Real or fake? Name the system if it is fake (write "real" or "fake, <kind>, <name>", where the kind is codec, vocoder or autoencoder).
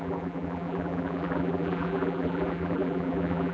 fake, vocoder, BigVGAN v2